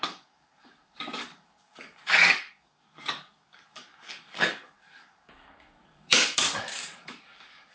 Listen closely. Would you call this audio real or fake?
fake